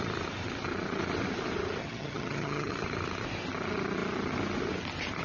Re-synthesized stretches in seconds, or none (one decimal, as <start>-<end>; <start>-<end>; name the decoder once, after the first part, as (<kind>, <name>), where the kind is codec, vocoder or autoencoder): 1.8-2.7 (vocoder, HiFi-GAN)